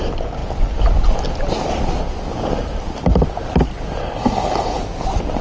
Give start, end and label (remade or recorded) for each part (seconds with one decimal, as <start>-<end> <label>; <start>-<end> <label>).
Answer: 0.0-4.0 recorded; 4.0-4.8 remade; 4.8-5.4 recorded